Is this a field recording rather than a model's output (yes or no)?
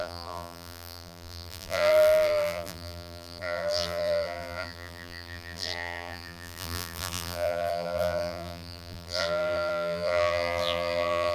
no